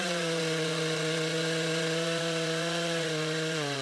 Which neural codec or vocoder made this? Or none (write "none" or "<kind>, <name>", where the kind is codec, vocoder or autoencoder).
vocoder, Vocos